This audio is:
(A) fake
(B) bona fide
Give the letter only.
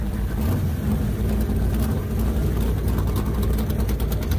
B